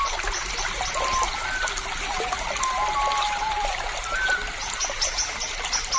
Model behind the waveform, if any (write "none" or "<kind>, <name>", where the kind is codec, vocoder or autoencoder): none